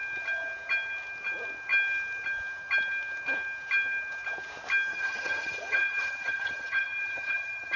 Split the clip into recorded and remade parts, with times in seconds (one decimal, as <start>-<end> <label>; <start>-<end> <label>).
0.0-4.9 recorded; 4.9-7.8 remade